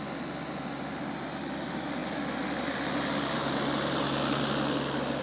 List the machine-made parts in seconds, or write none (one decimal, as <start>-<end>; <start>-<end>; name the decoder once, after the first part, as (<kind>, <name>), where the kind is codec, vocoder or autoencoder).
none